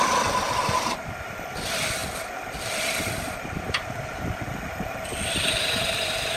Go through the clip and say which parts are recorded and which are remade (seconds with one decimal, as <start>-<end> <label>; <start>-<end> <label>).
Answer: 0.0-6.4 recorded